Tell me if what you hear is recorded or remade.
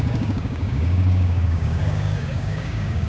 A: remade